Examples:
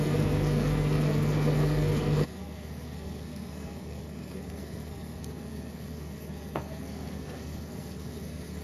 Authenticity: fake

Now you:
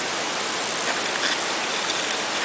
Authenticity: real